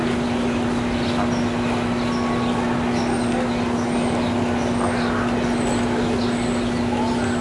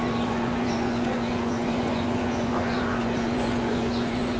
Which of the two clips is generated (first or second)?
second